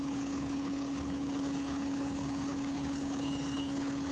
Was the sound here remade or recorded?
remade